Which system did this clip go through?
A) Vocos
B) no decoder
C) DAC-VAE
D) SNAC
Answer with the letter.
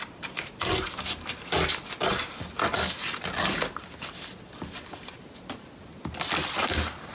B